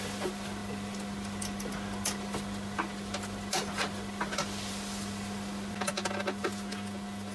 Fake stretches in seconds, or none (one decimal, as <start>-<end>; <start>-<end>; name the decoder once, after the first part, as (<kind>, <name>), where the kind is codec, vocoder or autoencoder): none